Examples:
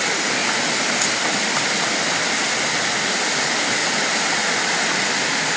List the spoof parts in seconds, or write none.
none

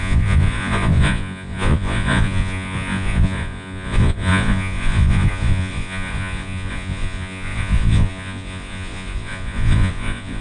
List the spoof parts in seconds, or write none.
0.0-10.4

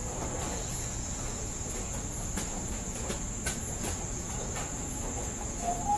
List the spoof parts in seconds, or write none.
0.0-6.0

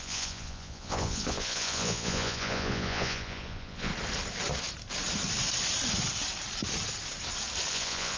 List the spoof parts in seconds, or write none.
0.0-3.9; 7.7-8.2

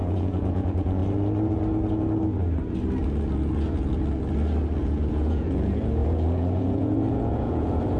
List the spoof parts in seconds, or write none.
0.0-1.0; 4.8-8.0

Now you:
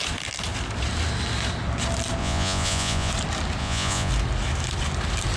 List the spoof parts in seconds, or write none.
2.2-3.1; 3.6-4.1

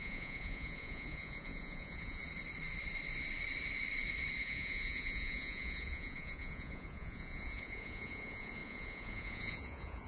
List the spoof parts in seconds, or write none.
0.0-2.2; 4.4-10.1